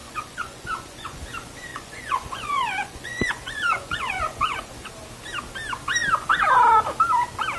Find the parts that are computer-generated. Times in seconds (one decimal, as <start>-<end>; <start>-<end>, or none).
0.0-1.2; 1.7-4.9

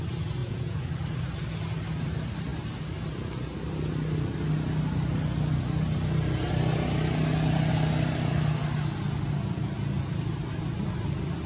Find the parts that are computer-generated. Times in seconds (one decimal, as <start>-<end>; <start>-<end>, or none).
0.4-0.9

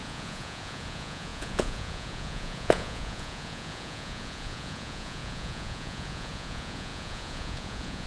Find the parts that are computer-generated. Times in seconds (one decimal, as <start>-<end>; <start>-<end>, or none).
0.0-8.1

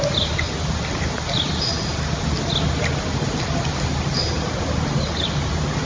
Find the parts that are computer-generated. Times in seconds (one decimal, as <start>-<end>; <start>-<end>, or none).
none

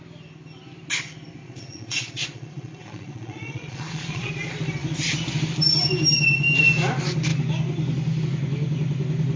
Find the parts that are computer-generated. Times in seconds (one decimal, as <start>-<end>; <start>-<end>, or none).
1.4-4.3

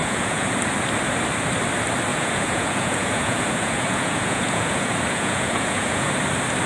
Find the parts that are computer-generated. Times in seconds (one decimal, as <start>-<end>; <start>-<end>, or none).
0.0-0.5; 2.1-6.1